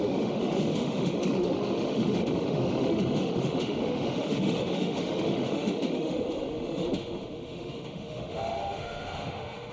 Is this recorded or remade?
remade